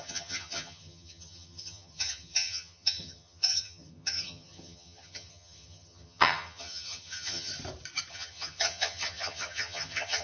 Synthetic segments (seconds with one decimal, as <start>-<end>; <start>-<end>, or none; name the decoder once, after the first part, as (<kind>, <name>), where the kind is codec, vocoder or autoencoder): 0.0-7.5 (vocoder, HiFi-GAN); 8.1-10.2